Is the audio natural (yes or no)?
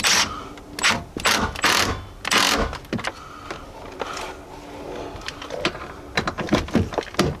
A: yes